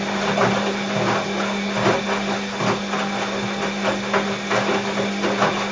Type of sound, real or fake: real